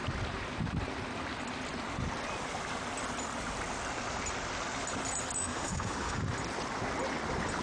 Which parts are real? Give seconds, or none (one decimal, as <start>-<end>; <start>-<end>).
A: 0.0-5.4; 6.2-7.6